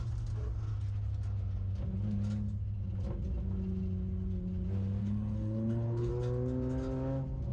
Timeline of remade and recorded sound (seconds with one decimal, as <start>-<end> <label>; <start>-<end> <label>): 0.0-5.0 recorded; 5.0-6.1 remade; 6.1-7.5 recorded